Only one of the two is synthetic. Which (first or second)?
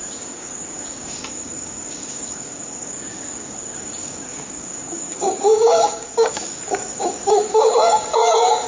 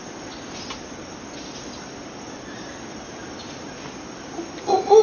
first